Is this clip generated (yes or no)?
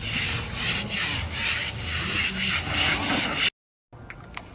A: no